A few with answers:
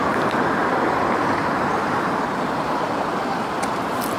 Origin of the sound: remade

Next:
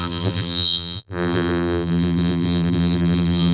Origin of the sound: remade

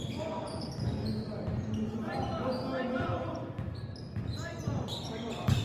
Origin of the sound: recorded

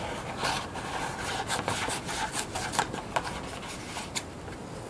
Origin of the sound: recorded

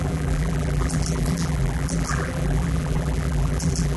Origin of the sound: remade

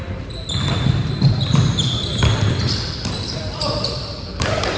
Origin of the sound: remade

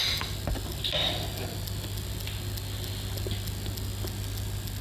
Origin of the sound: recorded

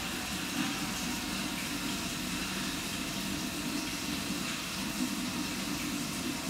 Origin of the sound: recorded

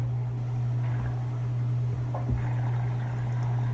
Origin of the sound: recorded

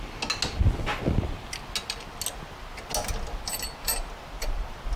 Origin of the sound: recorded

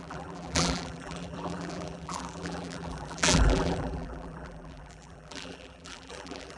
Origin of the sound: remade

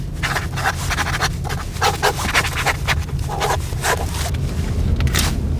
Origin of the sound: recorded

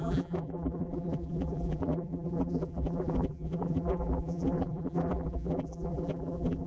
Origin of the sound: remade